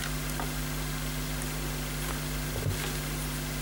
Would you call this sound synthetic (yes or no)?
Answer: no